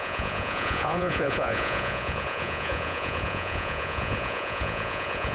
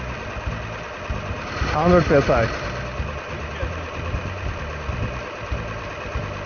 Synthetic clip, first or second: first